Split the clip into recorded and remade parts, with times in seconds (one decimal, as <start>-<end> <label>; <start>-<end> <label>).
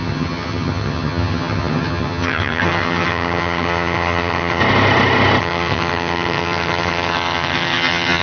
0.0-4.6 remade; 4.6-5.4 recorded; 5.4-8.2 remade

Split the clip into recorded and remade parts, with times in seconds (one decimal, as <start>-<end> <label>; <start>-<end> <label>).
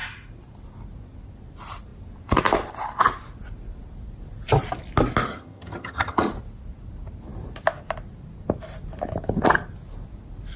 0.0-5.3 recorded; 5.3-6.3 remade; 6.3-10.6 recorded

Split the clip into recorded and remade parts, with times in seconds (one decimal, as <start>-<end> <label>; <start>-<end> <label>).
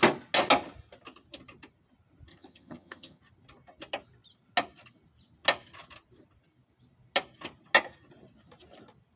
0.0-2.3 recorded; 2.3-3.2 remade; 3.2-9.2 recorded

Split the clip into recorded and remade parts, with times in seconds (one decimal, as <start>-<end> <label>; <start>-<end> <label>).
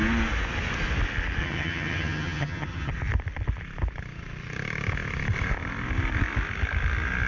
0.0-1.4 recorded; 1.4-2.9 remade; 2.9-7.3 recorded